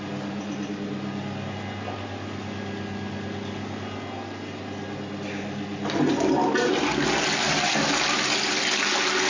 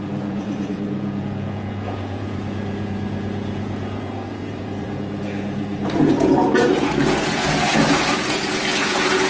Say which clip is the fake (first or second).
second